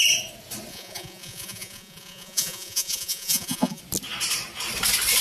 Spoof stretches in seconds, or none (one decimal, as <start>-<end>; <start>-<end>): 0.7-3.8

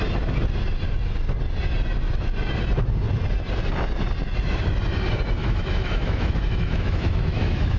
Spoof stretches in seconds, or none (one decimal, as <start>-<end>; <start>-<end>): 5.4-7.8

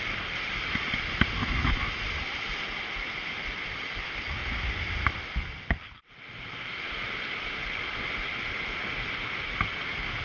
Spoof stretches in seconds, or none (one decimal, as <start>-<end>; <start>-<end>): 1.4-2.0

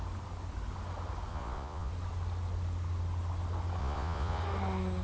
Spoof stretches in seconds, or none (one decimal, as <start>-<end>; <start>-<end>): 1.3-1.9; 3.8-4.4

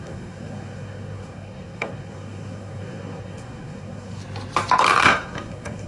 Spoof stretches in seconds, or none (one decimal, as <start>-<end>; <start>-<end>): 0.0-4.2; 5.0-5.9

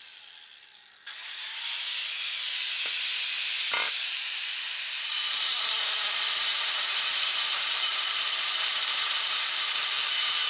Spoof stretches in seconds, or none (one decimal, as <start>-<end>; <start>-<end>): 3.7-10.5

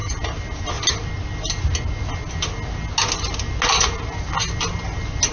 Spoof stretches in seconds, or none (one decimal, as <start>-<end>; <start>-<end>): none

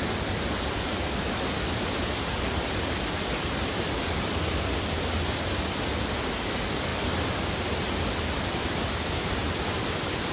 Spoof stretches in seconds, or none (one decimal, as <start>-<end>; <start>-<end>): 0.0-10.3